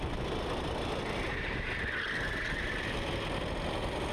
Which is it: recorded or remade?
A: recorded